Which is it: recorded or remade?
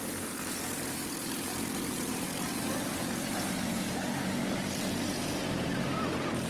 remade